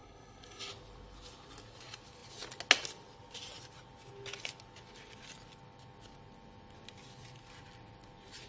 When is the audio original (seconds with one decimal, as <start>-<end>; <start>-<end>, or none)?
0.7-8.5